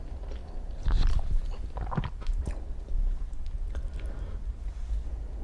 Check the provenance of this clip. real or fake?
real